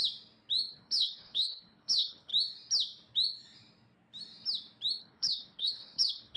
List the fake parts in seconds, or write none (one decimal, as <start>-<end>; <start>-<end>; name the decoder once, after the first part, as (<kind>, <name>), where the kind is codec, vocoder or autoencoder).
0.7-2.3 (codec, HILCodec); 5.0-6.4